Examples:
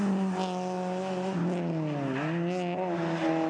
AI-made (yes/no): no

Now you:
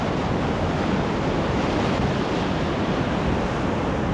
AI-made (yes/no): no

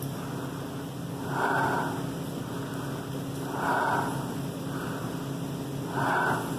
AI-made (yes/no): no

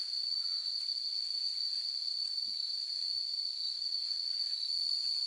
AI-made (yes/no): no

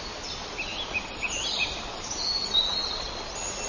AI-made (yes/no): no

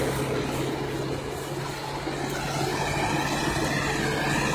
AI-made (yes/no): no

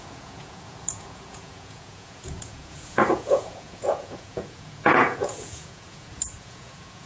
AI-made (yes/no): yes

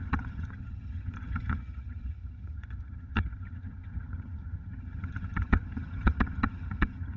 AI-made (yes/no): yes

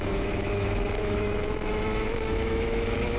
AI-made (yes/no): yes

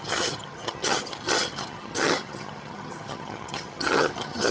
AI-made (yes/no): yes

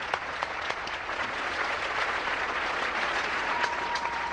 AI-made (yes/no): yes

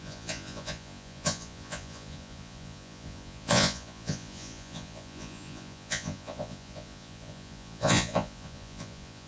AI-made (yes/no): yes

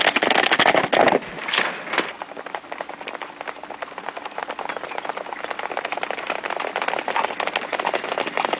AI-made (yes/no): no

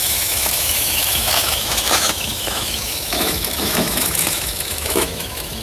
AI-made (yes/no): yes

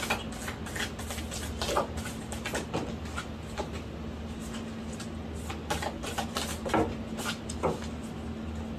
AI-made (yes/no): no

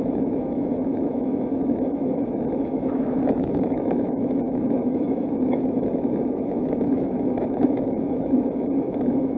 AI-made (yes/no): yes